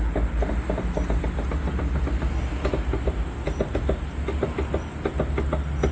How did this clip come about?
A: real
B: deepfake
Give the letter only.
A